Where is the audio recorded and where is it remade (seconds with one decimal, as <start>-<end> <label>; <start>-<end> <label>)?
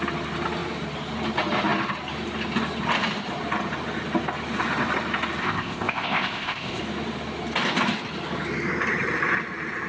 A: 0.0-5.4 recorded; 5.4-6.8 remade; 6.8-9.9 recorded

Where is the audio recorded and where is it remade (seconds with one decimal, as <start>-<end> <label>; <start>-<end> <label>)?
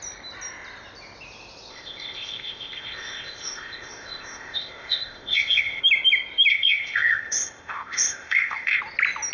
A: 0.0-1.7 recorded; 1.7-5.8 remade; 5.8-6.5 recorded; 6.5-8.8 remade; 8.8-9.3 recorded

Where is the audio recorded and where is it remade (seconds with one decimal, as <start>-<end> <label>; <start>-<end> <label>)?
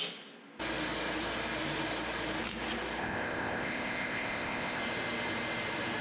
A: 0.0-3.0 recorded; 3.0-4.8 remade; 4.8-6.0 recorded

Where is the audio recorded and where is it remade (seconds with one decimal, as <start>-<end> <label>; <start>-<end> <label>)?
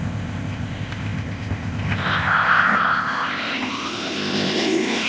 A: 0.0-5.1 remade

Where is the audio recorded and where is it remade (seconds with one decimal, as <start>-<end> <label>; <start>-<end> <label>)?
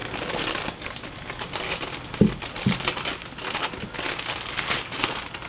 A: 0.0-5.5 recorded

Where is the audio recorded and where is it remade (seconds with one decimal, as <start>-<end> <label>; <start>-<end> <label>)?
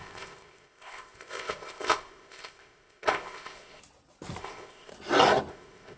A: 0.0-3.8 remade; 3.8-4.4 recorded; 4.4-4.9 remade; 4.9-5.5 recorded; 5.5-6.0 remade